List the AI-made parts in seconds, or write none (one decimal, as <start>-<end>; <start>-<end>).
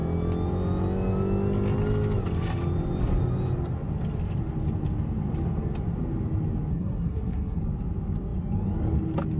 6.7-7.6